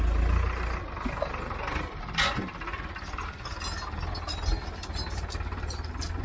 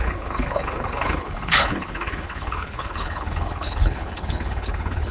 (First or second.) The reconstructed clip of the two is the second